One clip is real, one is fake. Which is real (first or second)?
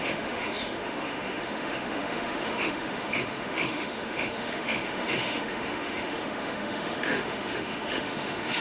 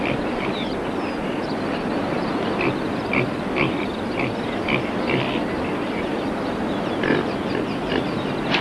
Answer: second